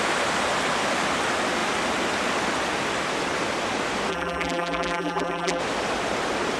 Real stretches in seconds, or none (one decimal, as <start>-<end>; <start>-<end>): 0.0-4.1; 5.6-6.6